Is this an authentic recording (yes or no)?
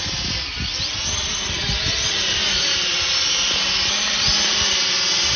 yes